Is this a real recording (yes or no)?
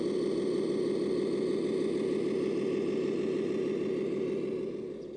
yes